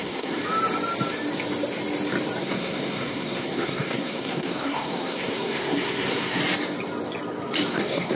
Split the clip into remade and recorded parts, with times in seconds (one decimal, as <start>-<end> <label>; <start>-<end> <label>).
0.0-0.4 remade; 0.4-2.4 recorded; 2.4-6.4 remade; 6.4-7.7 recorded; 7.7-8.2 remade